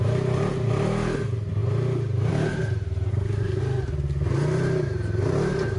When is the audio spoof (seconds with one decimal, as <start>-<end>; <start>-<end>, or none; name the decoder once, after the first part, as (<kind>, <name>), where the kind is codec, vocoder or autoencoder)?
3.1-3.6 (codec, SNAC)